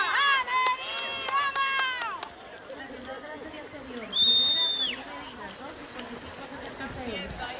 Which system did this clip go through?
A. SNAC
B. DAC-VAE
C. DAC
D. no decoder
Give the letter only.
D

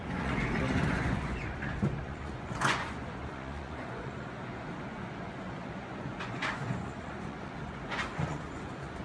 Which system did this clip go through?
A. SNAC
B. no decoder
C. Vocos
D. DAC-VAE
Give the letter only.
C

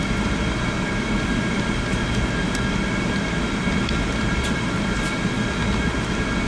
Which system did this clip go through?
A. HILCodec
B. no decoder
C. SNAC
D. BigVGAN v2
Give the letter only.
B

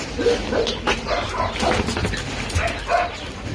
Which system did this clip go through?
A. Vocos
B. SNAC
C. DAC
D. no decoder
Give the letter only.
D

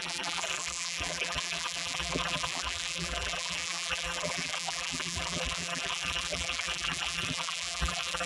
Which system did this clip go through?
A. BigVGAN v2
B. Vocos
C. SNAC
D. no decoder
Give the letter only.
A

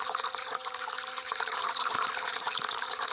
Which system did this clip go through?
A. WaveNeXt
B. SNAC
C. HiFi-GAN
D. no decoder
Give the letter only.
D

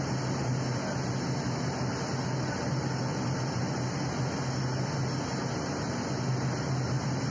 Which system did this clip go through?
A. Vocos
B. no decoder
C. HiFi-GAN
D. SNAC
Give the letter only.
B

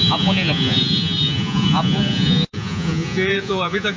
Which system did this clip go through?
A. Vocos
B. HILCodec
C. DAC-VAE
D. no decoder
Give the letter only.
A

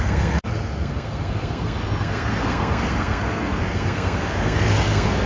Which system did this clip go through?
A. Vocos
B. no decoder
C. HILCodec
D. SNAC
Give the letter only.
D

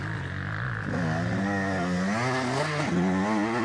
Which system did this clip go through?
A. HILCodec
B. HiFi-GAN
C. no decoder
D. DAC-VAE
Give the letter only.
C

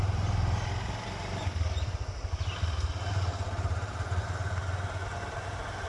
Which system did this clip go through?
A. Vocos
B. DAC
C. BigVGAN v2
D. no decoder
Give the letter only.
D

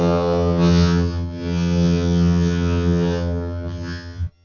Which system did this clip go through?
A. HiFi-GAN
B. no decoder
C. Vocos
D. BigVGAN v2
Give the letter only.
A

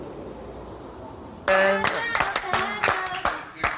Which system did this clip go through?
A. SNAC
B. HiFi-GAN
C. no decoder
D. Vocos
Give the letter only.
C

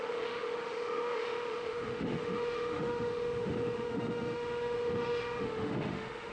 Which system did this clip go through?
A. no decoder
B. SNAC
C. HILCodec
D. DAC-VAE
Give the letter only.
D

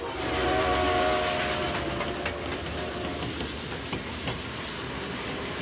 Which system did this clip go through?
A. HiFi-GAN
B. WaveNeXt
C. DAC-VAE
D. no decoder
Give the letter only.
D